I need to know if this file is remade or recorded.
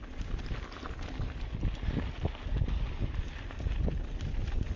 recorded